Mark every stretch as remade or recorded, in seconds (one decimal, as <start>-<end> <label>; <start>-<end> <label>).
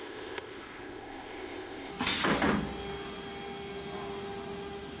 0.0-1.9 remade; 1.9-5.0 recorded